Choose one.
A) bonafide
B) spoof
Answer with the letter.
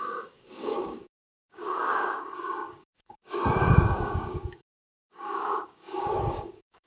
B